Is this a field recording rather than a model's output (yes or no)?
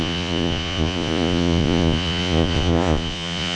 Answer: no